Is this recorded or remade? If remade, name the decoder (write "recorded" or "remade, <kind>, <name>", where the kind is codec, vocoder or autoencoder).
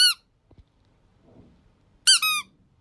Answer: recorded